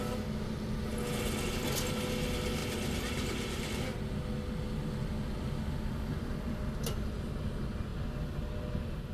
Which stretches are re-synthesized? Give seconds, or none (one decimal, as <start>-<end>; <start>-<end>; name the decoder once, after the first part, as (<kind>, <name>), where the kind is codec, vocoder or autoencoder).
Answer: none